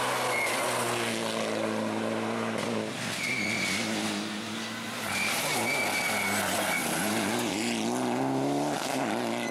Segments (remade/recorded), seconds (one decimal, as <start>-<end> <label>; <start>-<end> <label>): 0.0-9.5 recorded